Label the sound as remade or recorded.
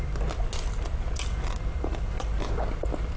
recorded